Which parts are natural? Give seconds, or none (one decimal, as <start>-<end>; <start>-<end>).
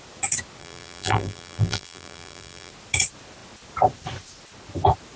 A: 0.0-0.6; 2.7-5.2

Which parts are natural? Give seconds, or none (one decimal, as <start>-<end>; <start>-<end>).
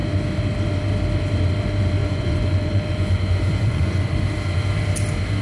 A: 0.0-2.0; 4.1-5.4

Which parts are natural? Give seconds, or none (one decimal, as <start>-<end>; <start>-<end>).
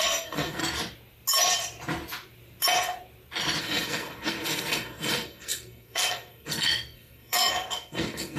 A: 0.6-3.6